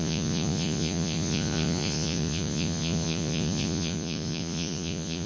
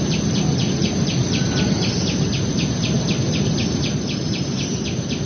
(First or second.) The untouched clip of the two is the second